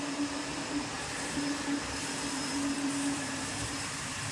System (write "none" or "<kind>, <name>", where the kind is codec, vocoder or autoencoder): vocoder, BigVGAN v2